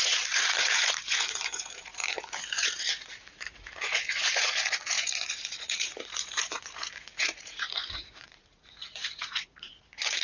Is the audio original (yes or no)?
no